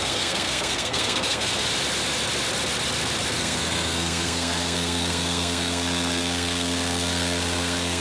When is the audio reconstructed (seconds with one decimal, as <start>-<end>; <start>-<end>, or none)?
0.0-1.5; 3.4-8.0